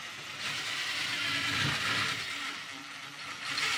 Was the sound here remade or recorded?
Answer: recorded